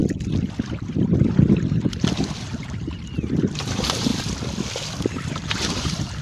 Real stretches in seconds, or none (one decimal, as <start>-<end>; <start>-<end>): 0.0-2.6; 4.1-5.0